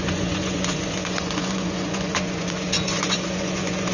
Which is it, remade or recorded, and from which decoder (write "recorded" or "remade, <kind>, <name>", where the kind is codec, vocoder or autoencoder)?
remade, vocoder, Vocos